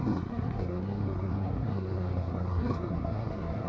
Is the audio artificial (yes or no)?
yes